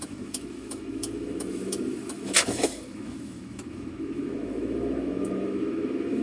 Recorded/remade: remade